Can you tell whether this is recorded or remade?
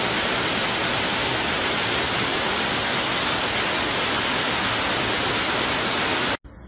recorded